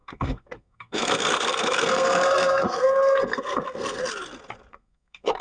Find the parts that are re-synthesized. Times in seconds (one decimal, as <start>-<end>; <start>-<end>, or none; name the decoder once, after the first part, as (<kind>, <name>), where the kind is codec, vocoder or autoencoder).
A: 0.0-4.0 (codec, SNAC); 4.7-5.4